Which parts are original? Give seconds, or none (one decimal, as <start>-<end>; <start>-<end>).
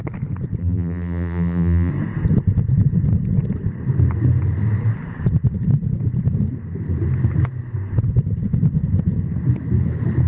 0.0-0.6; 1.9-10.3